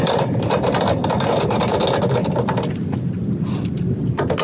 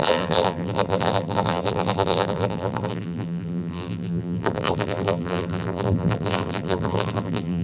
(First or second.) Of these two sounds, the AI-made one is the second